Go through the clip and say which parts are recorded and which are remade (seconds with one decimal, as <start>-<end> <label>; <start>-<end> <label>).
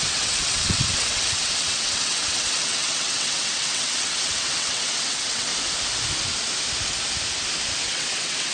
0.0-5.5 remade; 5.5-7.8 recorded; 7.8-8.5 remade